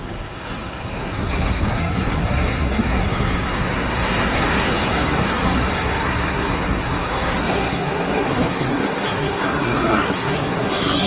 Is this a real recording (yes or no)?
no